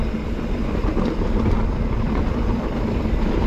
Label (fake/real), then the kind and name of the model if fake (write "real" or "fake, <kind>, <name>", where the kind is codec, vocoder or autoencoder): real